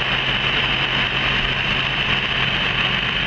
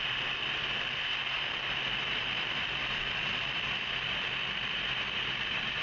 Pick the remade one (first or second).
second